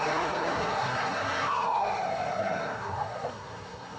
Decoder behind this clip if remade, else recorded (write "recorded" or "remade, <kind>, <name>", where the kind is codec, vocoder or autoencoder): remade, codec, SNAC